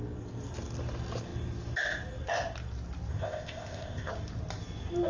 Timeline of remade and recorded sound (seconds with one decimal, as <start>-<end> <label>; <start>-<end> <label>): 0.0-3.1 recorded; 3.1-4.1 remade; 4.1-5.1 recorded

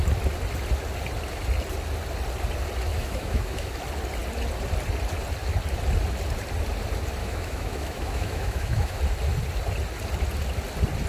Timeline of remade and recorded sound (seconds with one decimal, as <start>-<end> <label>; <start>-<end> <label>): 0.0-2.9 recorded; 2.9-3.7 remade; 3.7-7.2 recorded; 7.2-9.0 remade; 9.0-11.1 recorded

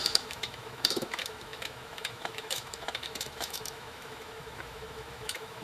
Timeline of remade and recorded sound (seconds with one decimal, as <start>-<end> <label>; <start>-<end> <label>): 0.0-5.6 remade

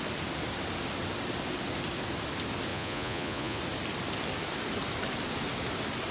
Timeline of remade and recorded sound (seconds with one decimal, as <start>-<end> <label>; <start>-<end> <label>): 0.0-2.7 recorded; 2.7-3.6 remade; 3.6-6.1 recorded

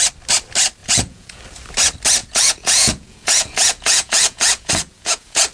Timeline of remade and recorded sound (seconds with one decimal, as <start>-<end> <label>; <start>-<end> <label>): 0.0-0.8 recorded; 0.8-1.4 remade; 1.4-2.2 recorded; 2.2-5.5 remade

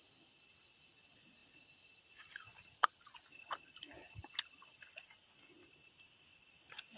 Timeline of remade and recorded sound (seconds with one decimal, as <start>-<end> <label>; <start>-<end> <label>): 0.0-7.0 recorded

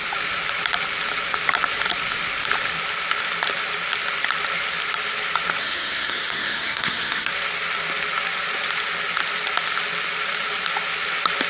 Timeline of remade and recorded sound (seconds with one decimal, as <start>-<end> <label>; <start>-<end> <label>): 0.0-5.6 recorded; 5.6-7.3 remade; 7.3-11.5 recorded